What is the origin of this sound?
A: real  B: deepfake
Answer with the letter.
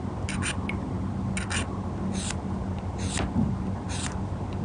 A